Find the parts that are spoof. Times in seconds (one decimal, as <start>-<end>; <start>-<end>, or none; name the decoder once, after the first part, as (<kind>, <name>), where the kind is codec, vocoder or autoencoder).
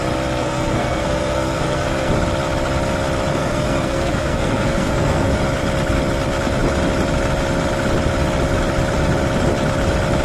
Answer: 0.4-2.1 (codec, SNAC); 3.3-5.4